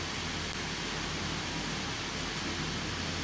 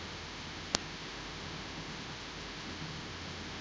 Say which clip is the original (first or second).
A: first